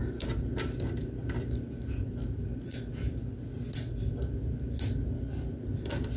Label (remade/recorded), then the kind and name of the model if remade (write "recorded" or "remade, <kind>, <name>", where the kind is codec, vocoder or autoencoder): recorded